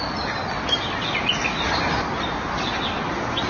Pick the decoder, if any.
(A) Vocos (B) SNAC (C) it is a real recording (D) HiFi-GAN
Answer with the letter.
C